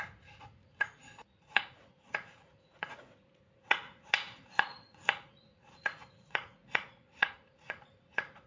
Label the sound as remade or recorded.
remade